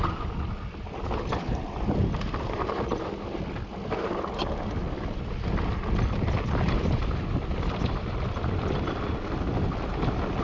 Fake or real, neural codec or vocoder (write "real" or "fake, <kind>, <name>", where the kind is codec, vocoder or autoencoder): real